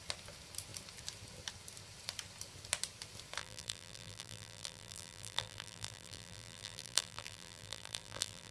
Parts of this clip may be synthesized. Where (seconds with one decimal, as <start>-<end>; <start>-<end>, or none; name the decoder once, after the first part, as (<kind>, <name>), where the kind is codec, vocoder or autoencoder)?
3.4-8.5 (vocoder, BigVGAN v2)